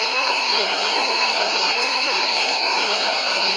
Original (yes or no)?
no